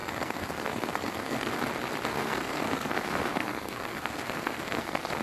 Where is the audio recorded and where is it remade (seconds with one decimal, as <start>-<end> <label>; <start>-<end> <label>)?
0.0-1.5 remade; 1.5-2.1 recorded; 2.1-5.2 remade